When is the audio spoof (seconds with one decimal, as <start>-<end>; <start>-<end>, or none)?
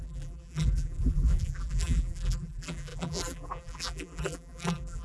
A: 0.0-5.0